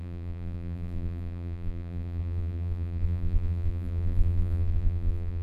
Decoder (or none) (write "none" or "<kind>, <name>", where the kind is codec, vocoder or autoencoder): vocoder, BigVGAN v2